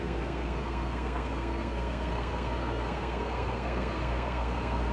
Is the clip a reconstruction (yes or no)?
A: yes